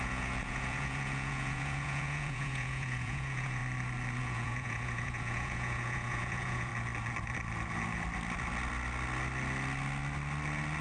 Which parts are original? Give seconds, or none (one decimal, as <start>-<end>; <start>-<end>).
3.6-4.2; 6.7-10.8